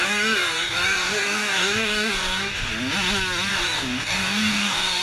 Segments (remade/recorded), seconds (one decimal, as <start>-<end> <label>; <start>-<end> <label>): 0.0-2.7 remade; 2.7-3.5 recorded; 3.5-5.0 remade